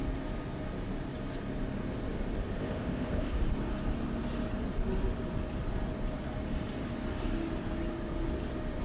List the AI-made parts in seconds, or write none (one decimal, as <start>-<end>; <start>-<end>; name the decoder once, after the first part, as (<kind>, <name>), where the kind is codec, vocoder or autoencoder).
2.6-3.3 (codec, ZipCodec)